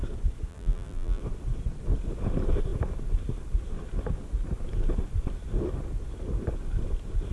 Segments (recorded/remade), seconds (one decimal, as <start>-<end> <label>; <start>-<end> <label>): 0.0-0.5 recorded; 0.5-1.2 remade; 1.2-7.3 recorded